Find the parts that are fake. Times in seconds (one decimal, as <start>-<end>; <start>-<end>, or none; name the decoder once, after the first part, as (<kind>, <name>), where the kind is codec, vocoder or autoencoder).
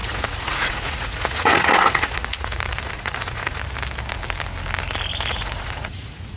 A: 0.0-3.6 (vocoder, Vocos); 5.3-6.4